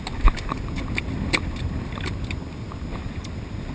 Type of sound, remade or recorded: recorded